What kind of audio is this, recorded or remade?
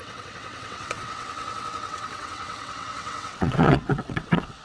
remade